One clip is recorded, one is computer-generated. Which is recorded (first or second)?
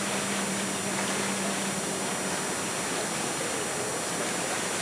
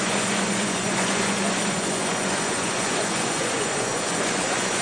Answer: first